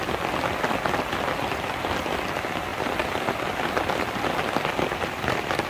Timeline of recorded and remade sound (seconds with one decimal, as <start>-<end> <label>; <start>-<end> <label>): 0.0-5.7 recorded